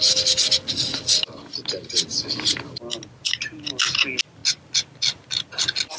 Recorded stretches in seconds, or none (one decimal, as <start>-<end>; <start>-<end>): 0.0-6.0